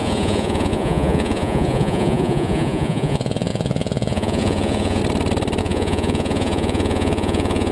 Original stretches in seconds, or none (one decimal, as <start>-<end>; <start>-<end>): 5.0-5.6